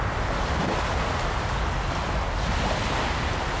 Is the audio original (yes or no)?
yes